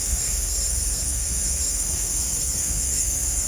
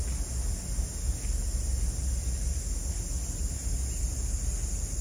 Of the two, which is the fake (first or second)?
first